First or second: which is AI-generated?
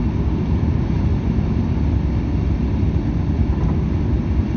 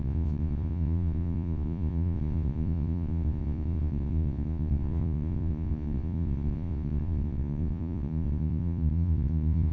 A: second